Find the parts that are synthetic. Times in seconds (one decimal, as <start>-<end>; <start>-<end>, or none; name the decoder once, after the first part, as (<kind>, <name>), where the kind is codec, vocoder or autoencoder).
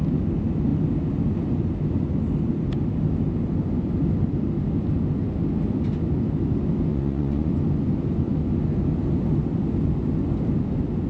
6.9-7.5 (vocoder, Vocos)